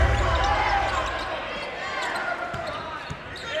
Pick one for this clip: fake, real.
real